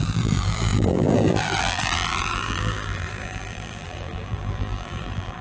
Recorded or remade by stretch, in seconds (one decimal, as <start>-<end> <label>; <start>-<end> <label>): 0.0-5.4 remade